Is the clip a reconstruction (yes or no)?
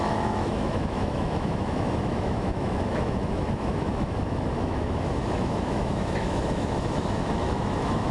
yes